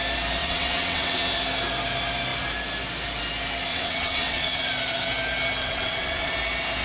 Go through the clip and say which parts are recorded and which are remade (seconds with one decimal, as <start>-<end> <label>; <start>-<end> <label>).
0.0-0.4 recorded; 0.4-1.2 remade; 1.2-3.7 recorded; 3.7-4.7 remade; 4.7-5.6 recorded; 5.6-6.3 remade; 6.3-6.8 recorded